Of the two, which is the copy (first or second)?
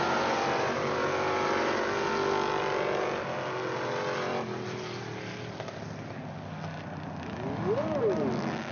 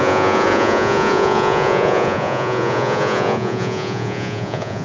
second